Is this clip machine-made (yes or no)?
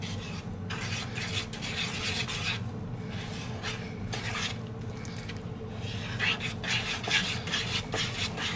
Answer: no